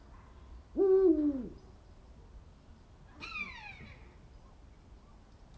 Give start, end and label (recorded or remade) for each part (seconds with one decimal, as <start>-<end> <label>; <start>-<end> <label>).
0.0-5.6 recorded